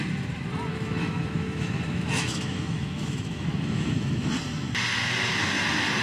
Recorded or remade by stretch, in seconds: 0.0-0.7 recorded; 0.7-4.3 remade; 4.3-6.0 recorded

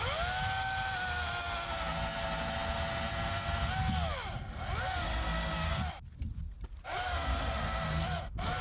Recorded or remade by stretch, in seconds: 0.0-8.6 recorded

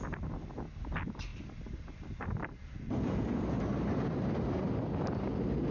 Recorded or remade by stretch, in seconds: 0.0-5.7 recorded

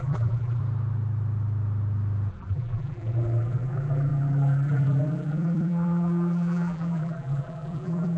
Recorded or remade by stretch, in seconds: 0.0-0.6 remade; 0.6-2.3 recorded; 2.3-8.2 remade

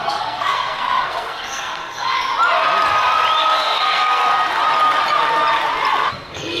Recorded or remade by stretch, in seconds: 0.0-2.3 remade; 2.3-3.4 recorded; 3.4-4.2 remade; 4.2-6.1 recorded; 6.1-6.6 remade